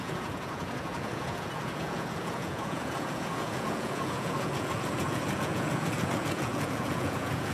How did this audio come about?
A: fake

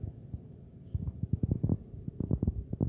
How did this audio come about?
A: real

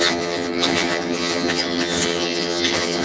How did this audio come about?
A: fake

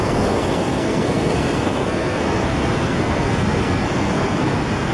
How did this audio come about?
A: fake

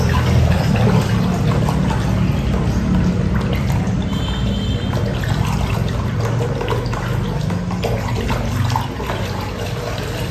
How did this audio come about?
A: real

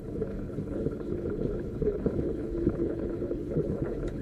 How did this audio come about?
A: fake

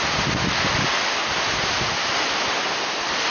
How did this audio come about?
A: real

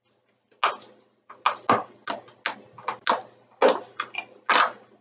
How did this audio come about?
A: real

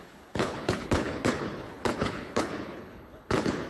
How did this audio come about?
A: fake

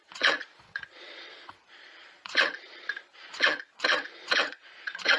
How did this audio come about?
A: fake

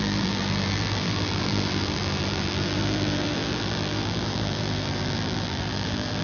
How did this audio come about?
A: fake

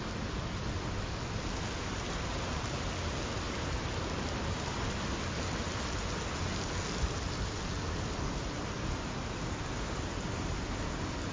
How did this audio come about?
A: real